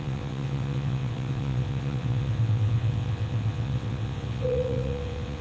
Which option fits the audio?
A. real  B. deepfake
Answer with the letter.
B